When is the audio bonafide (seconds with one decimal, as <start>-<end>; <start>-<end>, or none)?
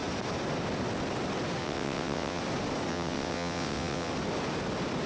0.0-1.6; 2.4-2.9; 4.1-5.1